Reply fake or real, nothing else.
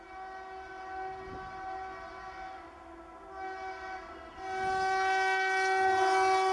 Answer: real